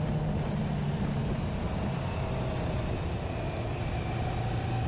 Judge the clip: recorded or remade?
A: recorded